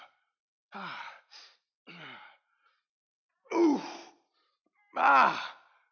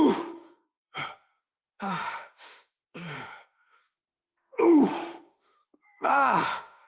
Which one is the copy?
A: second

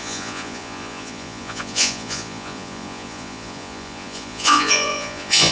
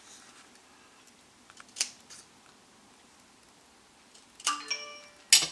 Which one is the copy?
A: first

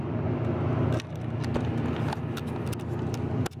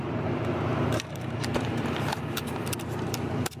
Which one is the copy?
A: second